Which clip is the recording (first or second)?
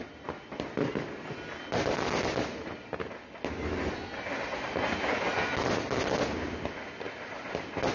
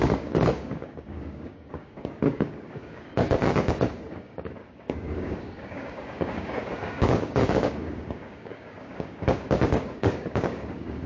first